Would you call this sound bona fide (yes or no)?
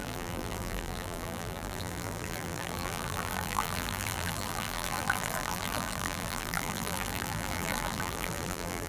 no